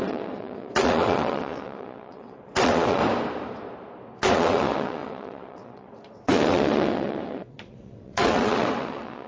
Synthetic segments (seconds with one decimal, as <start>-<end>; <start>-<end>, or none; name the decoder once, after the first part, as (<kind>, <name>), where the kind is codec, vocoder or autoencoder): 0.0-3.0 (vocoder, WaveNeXt); 4.3-9.3